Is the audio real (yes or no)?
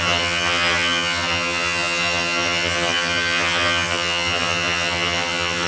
no